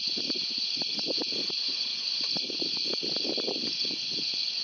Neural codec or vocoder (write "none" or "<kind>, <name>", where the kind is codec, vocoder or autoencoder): none